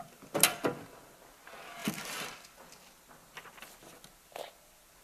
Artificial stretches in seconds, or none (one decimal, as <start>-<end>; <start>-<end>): none